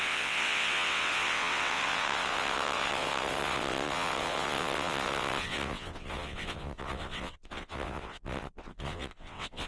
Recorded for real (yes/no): no